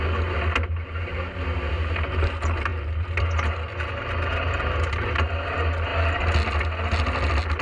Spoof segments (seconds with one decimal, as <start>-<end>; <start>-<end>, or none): none